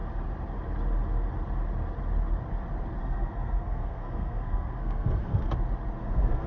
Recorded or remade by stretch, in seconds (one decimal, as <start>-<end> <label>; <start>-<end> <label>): 0.0-3.0 recorded; 3.0-5.5 remade; 5.5-6.0 recorded; 6.0-6.5 remade